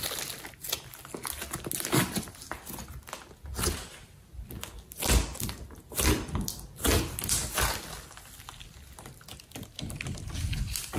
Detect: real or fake real